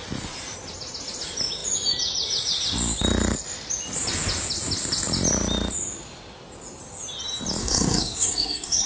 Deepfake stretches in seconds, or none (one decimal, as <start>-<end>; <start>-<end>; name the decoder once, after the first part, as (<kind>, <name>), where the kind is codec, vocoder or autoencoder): 7.6-8.9 (codec, SNAC)